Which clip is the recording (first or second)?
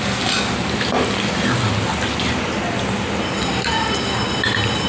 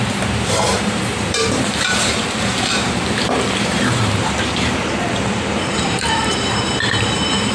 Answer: first